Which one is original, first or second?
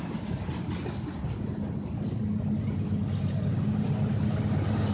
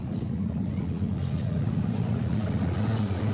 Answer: first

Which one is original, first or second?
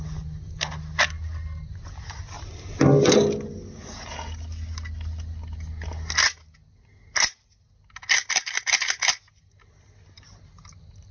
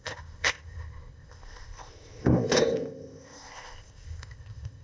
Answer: first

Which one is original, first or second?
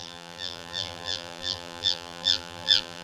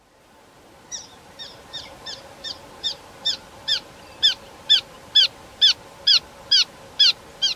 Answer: second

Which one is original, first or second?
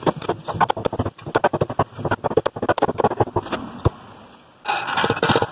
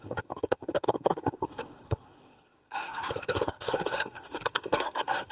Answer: first